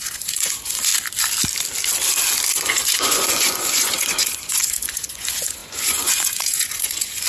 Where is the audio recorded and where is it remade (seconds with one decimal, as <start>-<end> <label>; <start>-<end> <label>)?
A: 0.0-0.9 remade; 0.9-2.5 recorded; 2.5-7.3 remade